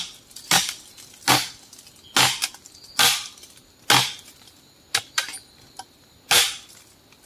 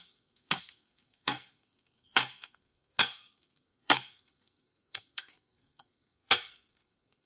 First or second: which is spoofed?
second